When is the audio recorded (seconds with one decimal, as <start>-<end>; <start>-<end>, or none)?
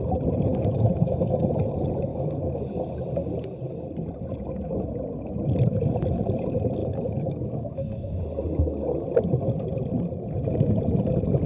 0.0-0.5; 1.5-2.1; 2.6-6.8; 8.2-11.5